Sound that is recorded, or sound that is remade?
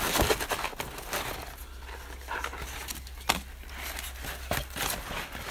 recorded